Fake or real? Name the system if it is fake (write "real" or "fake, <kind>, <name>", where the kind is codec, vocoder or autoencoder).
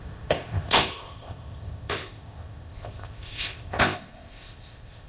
fake, codec, ZipCodec